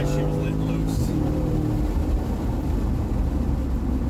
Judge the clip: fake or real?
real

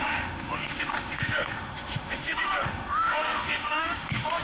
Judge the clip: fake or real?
fake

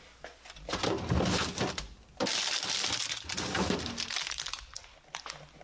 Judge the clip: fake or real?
real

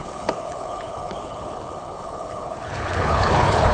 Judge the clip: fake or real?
fake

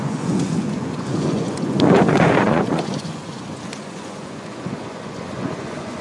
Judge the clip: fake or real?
fake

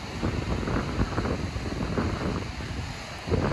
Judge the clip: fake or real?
real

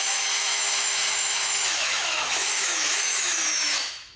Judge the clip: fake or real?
fake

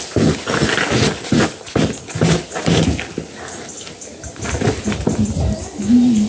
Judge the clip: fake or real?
real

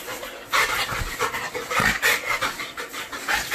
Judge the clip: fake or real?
real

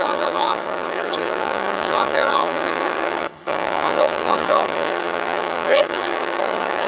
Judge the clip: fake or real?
fake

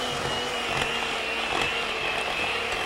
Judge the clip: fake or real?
real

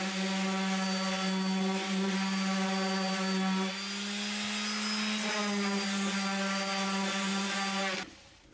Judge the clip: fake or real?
real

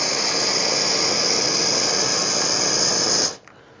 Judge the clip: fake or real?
real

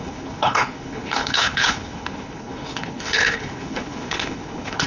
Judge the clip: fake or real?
fake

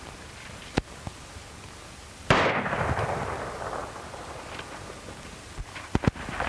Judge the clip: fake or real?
real